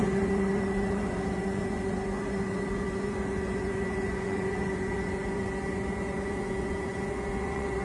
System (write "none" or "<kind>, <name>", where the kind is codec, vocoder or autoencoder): vocoder, Vocos